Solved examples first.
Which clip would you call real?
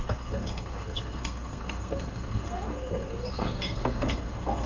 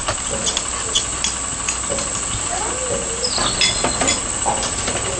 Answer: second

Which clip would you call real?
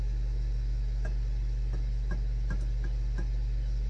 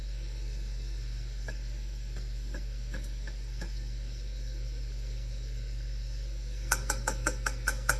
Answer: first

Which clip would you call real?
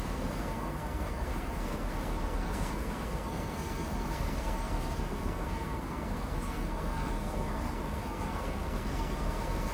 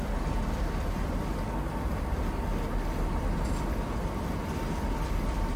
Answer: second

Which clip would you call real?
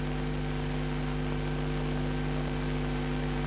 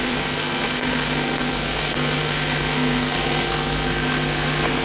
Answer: first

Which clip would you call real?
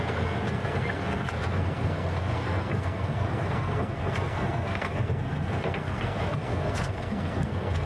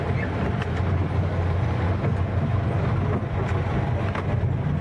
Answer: second